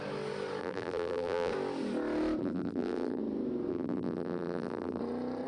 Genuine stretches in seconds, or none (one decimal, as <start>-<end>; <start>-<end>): 0.0-0.6; 1.5-2.4; 3.2-3.7; 5.0-5.5